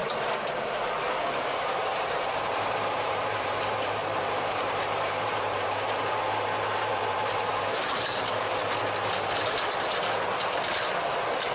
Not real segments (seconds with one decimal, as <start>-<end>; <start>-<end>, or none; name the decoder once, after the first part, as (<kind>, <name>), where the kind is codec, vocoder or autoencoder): 0.0-0.9 (vocoder, BigVGAN v2); 1.9-6.2; 6.9-8.8